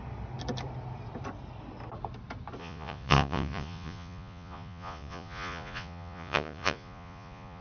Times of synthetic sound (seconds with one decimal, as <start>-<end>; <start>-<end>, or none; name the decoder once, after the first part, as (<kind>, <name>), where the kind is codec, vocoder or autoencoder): 2.6-7.6 (vocoder, Vocos)